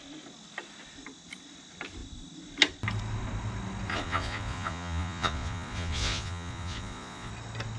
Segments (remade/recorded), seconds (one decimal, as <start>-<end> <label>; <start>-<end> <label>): 0.0-3.9 recorded; 3.9-7.3 remade; 7.3-7.8 recorded